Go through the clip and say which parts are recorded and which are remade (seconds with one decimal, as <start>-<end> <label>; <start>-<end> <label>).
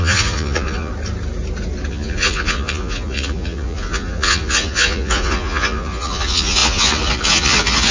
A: 0.0-0.9 remade; 0.9-1.9 recorded; 1.9-7.9 remade